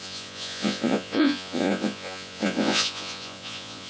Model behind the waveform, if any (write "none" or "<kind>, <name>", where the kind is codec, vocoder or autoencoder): vocoder, Vocos